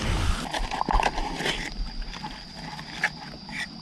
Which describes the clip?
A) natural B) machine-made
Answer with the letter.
A